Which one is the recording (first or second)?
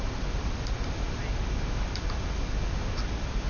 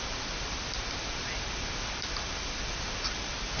first